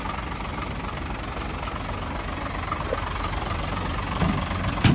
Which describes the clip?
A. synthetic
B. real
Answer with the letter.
B